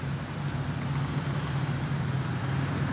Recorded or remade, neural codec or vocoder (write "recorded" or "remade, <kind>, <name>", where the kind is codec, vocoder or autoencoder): recorded